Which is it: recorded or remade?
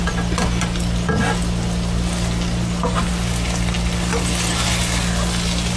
recorded